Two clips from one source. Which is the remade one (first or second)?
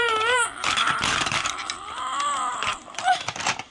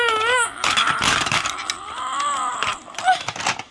first